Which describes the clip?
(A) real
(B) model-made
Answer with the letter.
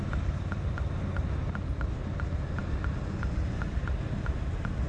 A